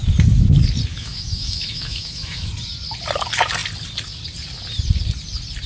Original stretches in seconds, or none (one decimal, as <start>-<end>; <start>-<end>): 0.0-0.9; 2.5-5.7